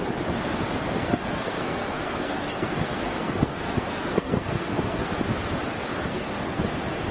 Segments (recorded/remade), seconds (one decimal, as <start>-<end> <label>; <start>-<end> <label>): 0.0-0.8 recorded; 0.8-5.1 remade; 5.1-6.0 recorded; 6.0-6.6 remade; 6.6-7.1 recorded